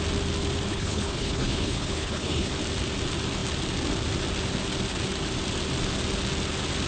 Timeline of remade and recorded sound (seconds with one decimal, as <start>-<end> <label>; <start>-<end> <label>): 0.0-0.7 recorded; 0.7-2.5 remade; 2.5-6.9 recorded